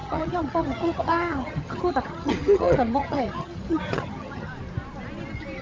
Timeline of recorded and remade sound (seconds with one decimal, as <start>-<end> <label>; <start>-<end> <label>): 0.0-4.5 remade; 4.5-5.6 recorded